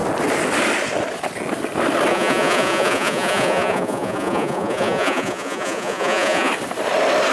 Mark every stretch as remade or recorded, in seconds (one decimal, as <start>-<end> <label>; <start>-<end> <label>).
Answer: 0.0-2.1 recorded; 2.1-6.5 remade; 6.5-7.3 recorded